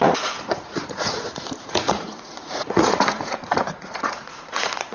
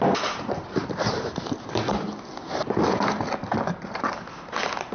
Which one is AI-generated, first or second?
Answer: first